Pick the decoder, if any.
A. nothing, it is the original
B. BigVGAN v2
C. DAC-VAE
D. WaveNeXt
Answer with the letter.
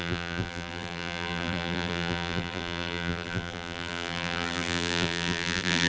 B